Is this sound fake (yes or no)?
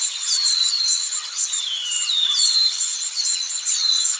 yes